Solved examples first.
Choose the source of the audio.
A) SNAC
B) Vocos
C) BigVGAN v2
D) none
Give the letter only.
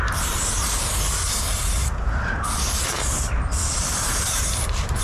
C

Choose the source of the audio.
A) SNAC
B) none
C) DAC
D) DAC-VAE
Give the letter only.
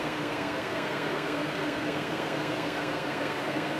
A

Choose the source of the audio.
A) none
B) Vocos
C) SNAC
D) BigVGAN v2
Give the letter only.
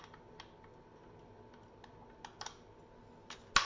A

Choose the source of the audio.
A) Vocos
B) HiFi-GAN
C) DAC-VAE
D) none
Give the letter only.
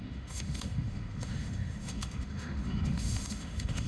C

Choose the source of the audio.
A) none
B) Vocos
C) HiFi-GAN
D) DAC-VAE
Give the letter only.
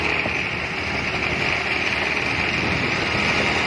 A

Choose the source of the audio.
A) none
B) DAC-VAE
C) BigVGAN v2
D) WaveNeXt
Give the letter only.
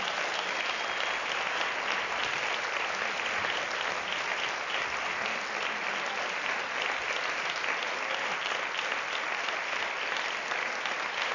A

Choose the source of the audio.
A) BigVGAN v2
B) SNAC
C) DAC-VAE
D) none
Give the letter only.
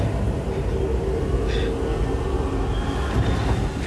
D